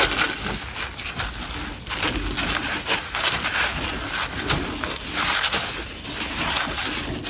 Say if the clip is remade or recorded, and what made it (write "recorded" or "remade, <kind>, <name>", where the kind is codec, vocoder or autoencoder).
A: recorded